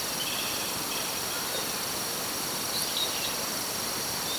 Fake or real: real